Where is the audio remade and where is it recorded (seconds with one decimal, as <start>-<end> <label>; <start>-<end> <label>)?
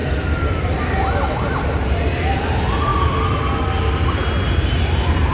0.0-5.3 recorded